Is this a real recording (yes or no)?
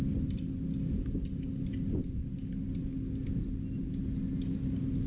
yes